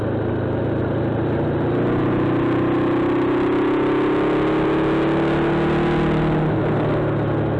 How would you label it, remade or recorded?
recorded